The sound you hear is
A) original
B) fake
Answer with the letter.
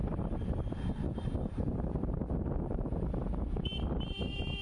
A